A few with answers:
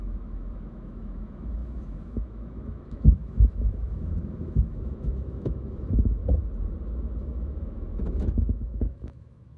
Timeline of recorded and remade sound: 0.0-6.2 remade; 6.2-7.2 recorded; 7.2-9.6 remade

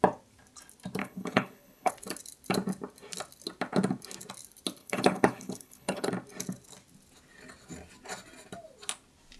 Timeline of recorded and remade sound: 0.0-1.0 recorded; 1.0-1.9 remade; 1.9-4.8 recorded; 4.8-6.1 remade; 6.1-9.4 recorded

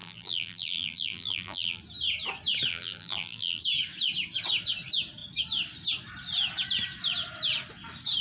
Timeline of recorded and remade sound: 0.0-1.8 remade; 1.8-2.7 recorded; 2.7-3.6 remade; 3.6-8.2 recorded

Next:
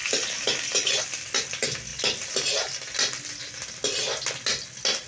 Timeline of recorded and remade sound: 0.0-5.1 recorded

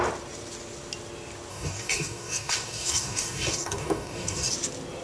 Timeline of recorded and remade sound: 0.0-1.5 recorded; 1.5-4.5 remade; 4.5-5.0 recorded

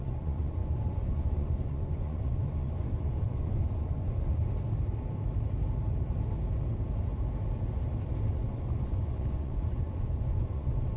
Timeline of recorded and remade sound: 0.0-4.4 remade; 4.4-8.3 recorded; 8.3-11.0 remade

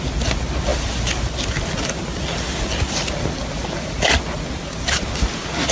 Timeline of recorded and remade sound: 0.0-5.7 recorded

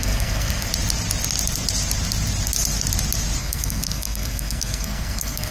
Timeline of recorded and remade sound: 0.0-0.7 remade; 0.7-3.4 recorded; 3.4-5.5 remade